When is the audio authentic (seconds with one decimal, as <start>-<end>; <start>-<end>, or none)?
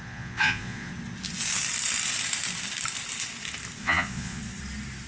0.9-3.8; 4.4-5.1